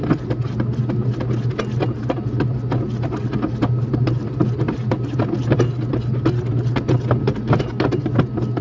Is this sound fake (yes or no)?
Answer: no